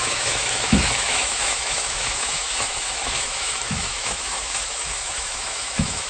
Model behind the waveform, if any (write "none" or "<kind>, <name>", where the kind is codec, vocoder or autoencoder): autoencoder, DAC-VAE